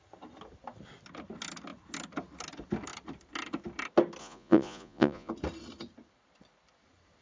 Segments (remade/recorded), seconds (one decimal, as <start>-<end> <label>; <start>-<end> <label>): 0.0-4.2 recorded; 4.2-5.3 remade; 5.3-7.2 recorded